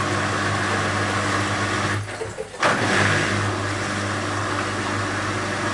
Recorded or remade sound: recorded